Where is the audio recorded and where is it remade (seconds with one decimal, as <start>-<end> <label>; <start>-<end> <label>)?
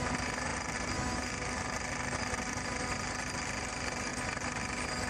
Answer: 0.0-5.1 recorded